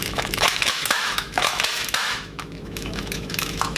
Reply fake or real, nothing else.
fake